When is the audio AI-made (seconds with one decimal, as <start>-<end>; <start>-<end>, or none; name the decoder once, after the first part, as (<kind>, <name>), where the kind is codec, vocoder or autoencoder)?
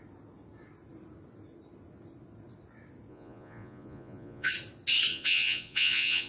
3.1-4.5 (vocoder, Vocos); 5.1-6.3